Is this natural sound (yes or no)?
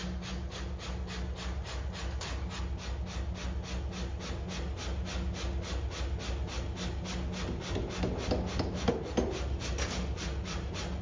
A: yes